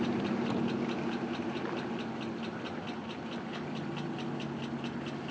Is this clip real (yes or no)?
yes